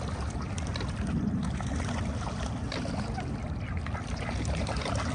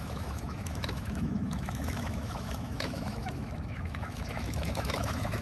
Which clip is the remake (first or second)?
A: second